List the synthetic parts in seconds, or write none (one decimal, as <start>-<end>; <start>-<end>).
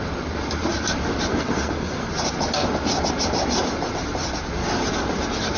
1.3-2.1